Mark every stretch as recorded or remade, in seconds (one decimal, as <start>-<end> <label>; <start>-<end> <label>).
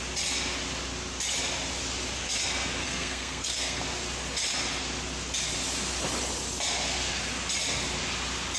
0.0-2.8 recorded; 2.8-3.8 remade; 3.8-8.6 recorded